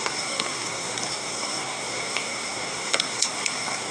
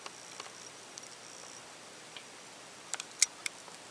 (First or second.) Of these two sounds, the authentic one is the second